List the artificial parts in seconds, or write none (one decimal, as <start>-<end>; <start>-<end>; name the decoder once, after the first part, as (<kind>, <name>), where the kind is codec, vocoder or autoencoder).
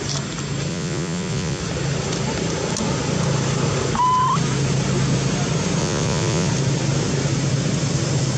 0.7-1.6 (vocoder, Vocos); 5.8-6.5